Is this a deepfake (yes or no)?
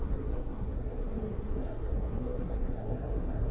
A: yes